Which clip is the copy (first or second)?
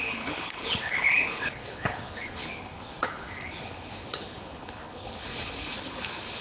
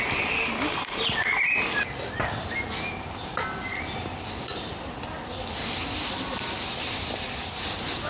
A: first